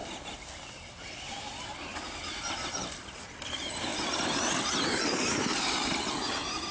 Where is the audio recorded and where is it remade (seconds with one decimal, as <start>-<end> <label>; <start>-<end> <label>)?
0.0-1.0 recorded; 1.0-1.9 remade; 1.9-2.7 recorded; 2.7-3.9 remade; 3.9-4.5 recorded; 4.5-6.7 remade